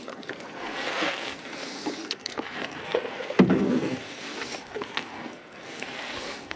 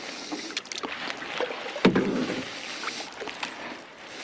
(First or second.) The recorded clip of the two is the second